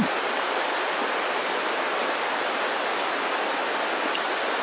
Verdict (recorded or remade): recorded